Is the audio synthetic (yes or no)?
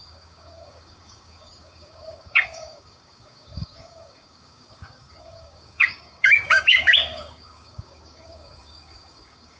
yes